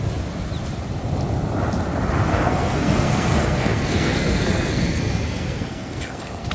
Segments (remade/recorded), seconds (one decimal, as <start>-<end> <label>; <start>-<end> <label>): 0.0-2.3 recorded; 2.3-6.5 remade